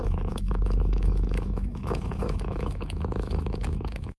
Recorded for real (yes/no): no